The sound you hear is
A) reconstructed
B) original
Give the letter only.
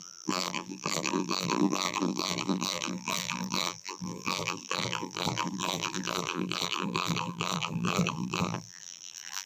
A